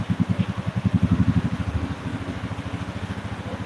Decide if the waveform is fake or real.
real